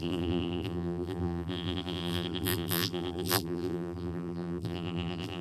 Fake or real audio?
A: fake